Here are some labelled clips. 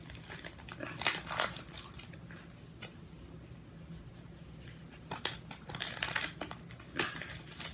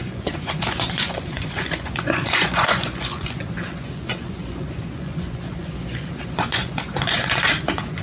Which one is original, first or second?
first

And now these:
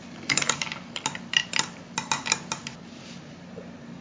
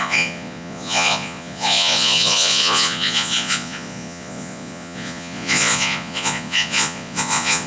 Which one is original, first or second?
first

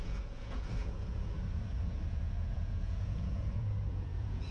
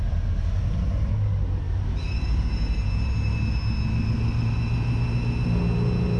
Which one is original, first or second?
second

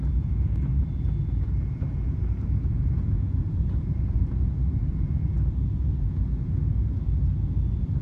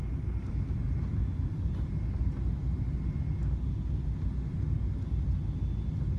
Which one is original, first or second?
second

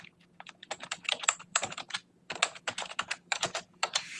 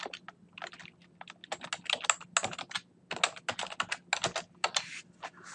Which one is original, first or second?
second